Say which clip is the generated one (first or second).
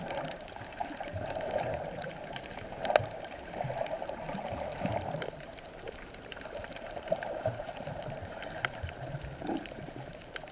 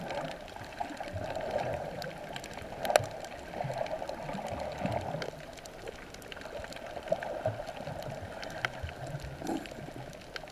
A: first